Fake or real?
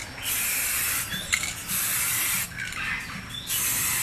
real